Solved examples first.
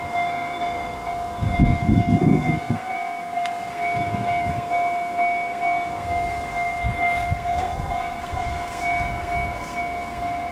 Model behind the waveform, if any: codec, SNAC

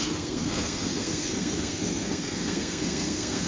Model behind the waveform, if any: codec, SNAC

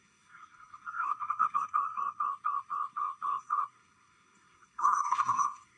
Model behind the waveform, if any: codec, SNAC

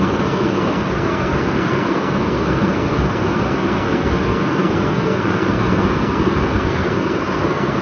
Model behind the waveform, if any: codec, SNAC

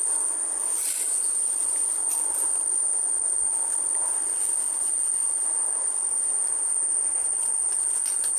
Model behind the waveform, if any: none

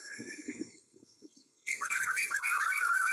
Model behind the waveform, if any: codec, SNAC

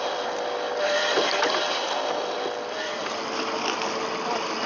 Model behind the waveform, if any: none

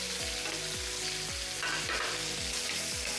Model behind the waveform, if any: none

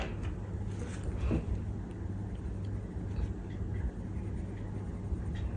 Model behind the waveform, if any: none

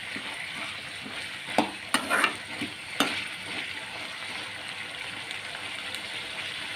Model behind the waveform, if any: none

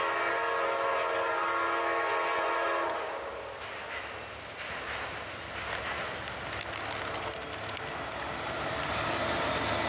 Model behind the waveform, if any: none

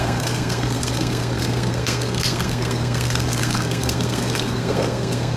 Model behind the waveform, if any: codec, SNAC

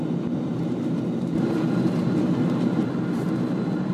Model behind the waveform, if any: none